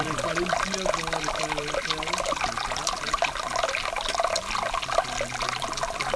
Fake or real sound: real